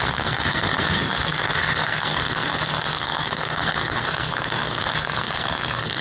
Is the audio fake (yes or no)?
yes